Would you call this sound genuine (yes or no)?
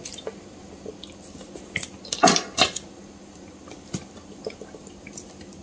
yes